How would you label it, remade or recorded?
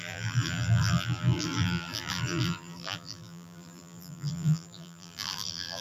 remade